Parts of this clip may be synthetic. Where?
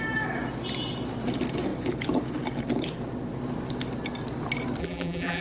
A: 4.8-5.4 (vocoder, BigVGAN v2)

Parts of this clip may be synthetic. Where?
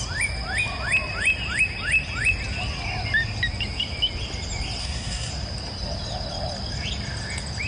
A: 4.8-5.3 (codec, SNAC)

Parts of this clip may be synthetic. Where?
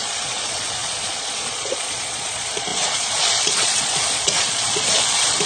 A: 0.0-5.5 (vocoder, Vocos)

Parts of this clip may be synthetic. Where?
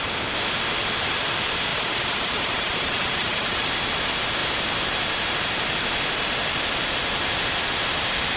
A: 1.7-3.7 (vocoder, BigVGAN v2)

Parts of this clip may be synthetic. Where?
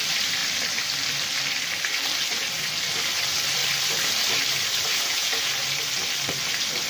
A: 4.9-5.5 (vocoder, Vocos)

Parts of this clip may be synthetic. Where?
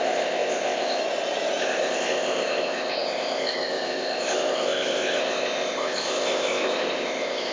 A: 0.0-1.0 (codec, ZipCodec); 1.6-7.5